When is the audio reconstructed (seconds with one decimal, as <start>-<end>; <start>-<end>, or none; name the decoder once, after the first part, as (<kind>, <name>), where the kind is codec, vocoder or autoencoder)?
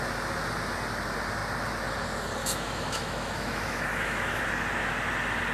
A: 2.4-4.4 (autoencoder, DAC-VAE)